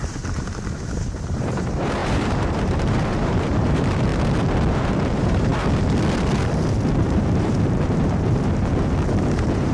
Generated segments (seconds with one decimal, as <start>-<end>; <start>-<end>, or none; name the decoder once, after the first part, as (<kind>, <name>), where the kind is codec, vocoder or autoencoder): 0.0-4.1 (vocoder, BigVGAN v2); 4.8-5.5; 7.0-9.7